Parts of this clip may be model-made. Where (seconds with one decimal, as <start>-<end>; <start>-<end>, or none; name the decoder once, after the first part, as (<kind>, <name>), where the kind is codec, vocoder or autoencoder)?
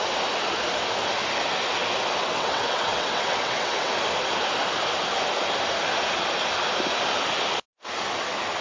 2.2-3.9 (vocoder, WaveNeXt)